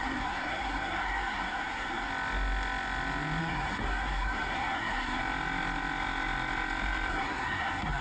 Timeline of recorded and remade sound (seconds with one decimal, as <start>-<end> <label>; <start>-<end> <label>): 0.0-2.1 remade; 2.1-3.4 recorded; 3.4-5.2 remade; 5.2-7.1 recorded; 7.1-8.0 remade

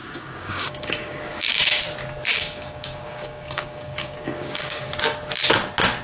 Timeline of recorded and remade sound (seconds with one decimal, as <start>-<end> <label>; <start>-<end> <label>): 0.0-1.8 remade; 1.8-2.3 recorded; 2.3-4.8 remade; 4.8-6.0 recorded

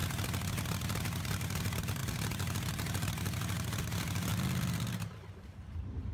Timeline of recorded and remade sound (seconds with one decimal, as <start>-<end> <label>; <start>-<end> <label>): 0.0-1.2 recorded; 1.2-6.1 remade

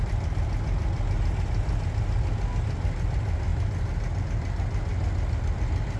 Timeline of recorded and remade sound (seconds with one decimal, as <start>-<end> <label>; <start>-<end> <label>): 0.0-6.0 recorded

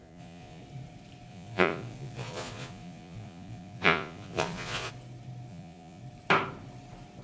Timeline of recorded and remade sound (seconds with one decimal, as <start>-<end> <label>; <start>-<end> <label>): 0.0-0.6 remade; 0.6-1.3 recorded; 1.3-4.9 remade; 4.9-5.5 recorded; 5.5-6.0 remade; 6.0-7.2 recorded

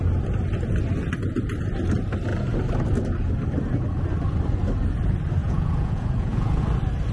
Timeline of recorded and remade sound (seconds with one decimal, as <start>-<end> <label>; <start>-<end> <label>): 0.0-5.4 recorded; 5.4-6.6 remade; 6.6-7.1 recorded

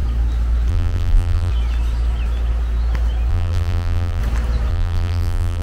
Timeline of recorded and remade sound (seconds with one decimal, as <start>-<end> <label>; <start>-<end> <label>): 0.0-0.7 recorded; 0.7-1.5 remade; 1.5-3.3 recorded; 3.3-4.2 remade; 4.2-4.7 recorded; 4.7-5.6 remade

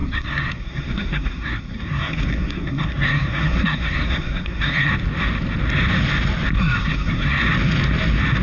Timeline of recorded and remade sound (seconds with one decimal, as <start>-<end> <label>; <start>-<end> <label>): 0.0-4.9 remade; 4.9-6.8 recorded; 6.8-7.4 remade; 7.4-8.4 recorded